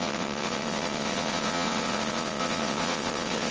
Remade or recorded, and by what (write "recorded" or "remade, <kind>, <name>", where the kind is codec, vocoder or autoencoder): remade, vocoder, WaveNeXt